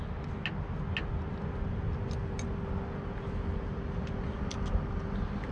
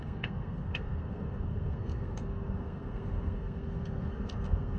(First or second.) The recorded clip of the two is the first